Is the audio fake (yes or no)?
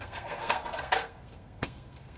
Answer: yes